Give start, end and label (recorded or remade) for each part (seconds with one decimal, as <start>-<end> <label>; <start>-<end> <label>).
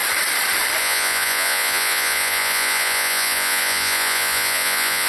0.0-0.8 recorded; 0.8-5.1 remade